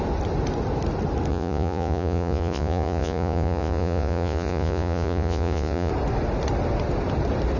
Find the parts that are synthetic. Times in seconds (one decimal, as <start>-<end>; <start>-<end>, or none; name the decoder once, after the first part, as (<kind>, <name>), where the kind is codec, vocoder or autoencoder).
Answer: 1.3-5.9 (vocoder, Vocos)